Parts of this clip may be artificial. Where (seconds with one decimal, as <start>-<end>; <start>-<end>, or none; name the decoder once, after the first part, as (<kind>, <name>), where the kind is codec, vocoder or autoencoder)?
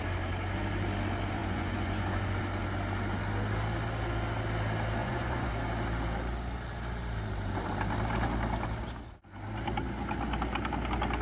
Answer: 1.4-2.4 (vocoder, Vocos); 5.0-5.5